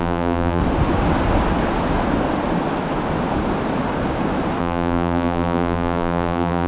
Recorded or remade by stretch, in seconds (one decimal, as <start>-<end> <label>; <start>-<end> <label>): 0.0-0.6 remade; 0.6-4.6 recorded; 4.6-6.7 remade